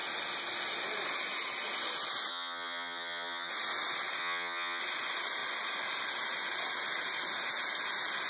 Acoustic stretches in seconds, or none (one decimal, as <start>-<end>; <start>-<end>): 0.0-2.3; 3.5-4.2; 4.8-8.3